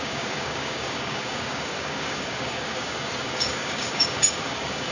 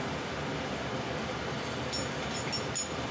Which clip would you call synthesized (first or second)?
first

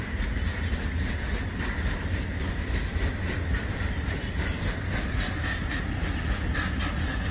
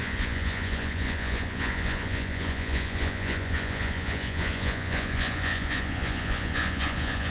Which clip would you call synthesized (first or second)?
second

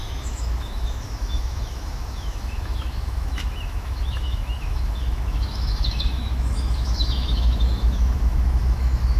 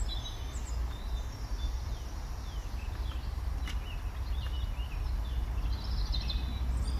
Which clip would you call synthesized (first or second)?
first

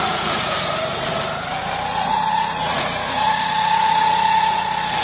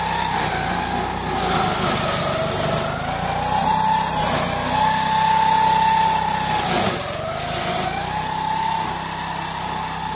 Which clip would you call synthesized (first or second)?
first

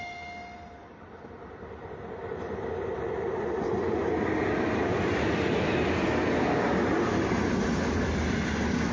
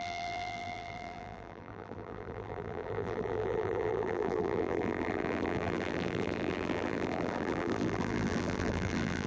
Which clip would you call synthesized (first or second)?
second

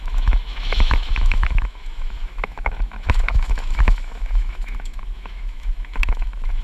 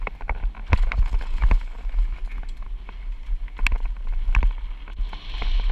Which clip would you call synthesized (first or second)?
first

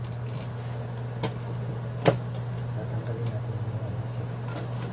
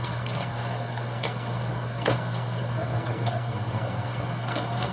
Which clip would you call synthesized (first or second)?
second